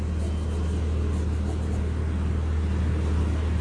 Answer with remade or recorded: recorded